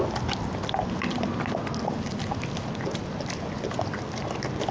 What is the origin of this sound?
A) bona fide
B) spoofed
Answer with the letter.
A